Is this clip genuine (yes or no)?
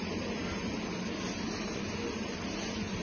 yes